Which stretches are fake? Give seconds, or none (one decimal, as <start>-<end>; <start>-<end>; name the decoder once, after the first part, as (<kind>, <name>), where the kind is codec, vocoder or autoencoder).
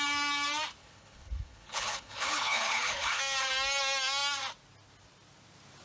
0.8-3.2 (codec, HILCodec)